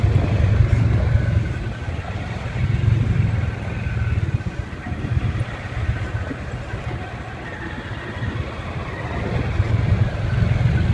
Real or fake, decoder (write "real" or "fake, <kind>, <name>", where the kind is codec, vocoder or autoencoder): real